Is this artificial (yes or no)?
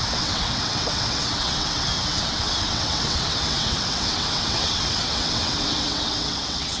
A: yes